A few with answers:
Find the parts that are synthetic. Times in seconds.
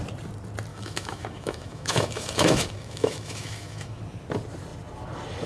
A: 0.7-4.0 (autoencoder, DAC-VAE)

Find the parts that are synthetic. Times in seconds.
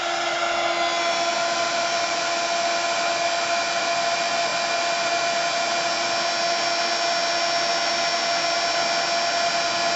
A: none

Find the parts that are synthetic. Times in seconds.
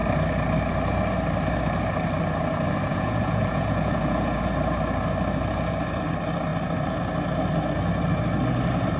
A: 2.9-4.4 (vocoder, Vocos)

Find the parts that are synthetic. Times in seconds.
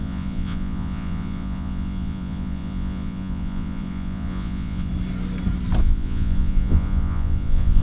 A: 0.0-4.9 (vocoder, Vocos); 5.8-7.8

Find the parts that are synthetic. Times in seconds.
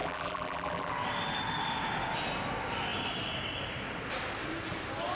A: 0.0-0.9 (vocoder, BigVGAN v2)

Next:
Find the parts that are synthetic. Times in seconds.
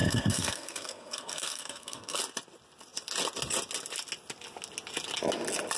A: 0.0-2.2 (codec, SNAC)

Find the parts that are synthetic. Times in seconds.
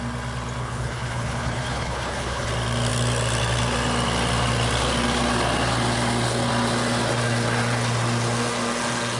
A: 0.6-2.5 (codec, HILCodec)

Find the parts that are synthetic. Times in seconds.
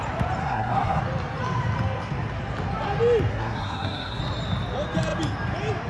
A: 0.4-1.0 (codec, SNAC); 3.3-4.2